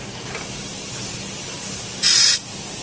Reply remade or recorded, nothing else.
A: recorded